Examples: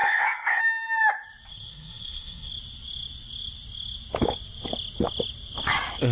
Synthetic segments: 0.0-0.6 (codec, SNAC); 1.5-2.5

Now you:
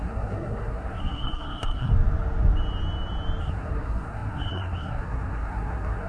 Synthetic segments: 0.0-1.9 (codec, SNAC); 3.4-6.1

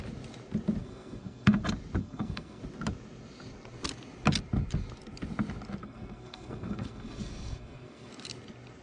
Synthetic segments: 0.8-1.6 (codec, SNAC); 2.0-2.6; 5.8-8.1

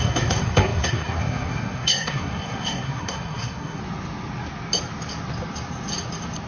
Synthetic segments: 0.0-3.8 (codec, SNAC)

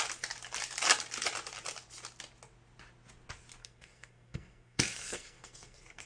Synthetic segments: 3.6-6.1 (codec, SNAC)

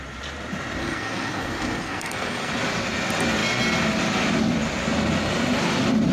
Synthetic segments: 0.8-2.5 (codec, SNAC)

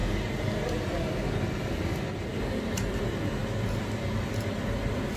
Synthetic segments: none

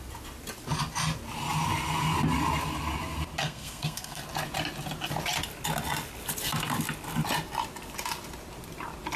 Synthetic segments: 3.4-4.2 (codec, SNAC)